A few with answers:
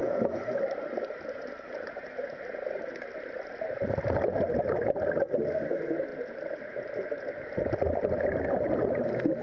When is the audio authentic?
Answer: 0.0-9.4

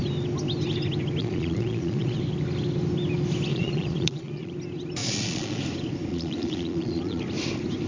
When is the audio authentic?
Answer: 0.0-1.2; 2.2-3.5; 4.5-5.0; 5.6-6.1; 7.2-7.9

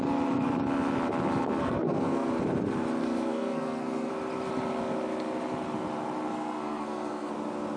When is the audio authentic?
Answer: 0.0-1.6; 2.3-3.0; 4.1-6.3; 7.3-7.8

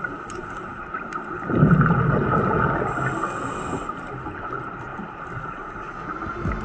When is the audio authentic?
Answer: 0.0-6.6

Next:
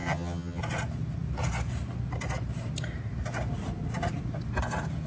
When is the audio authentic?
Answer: 0.6-5.1